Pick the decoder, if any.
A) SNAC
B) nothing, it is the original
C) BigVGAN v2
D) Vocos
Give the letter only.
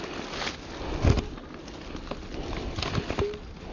B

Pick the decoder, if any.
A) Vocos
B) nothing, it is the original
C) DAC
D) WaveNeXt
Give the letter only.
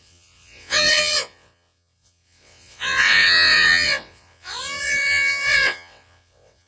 D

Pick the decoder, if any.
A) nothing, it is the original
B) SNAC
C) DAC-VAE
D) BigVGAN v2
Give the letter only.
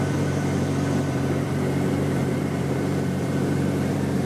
D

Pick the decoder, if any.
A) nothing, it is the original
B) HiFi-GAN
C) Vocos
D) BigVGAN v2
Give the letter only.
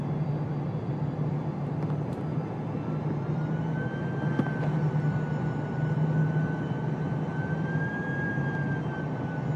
A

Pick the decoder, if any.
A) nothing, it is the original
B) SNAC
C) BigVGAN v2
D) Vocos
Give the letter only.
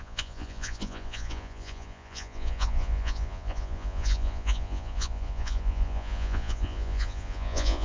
D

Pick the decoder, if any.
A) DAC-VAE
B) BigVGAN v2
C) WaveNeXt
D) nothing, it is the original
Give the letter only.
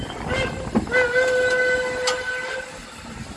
D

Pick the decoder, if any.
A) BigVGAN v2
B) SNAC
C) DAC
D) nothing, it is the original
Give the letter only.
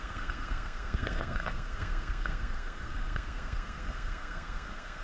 B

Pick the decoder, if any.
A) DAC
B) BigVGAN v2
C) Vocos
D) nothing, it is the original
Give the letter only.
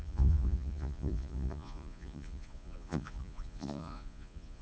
C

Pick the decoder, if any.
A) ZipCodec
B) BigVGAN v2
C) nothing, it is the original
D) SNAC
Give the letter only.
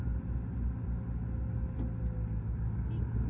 C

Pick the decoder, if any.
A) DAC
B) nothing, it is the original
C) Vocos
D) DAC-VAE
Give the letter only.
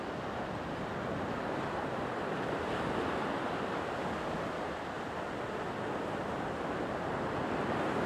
B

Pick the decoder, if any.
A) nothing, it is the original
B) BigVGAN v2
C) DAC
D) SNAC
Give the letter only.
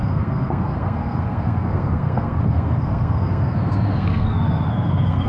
D